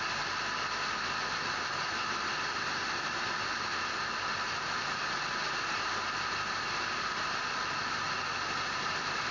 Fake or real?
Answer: real